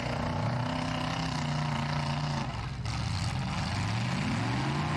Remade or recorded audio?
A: recorded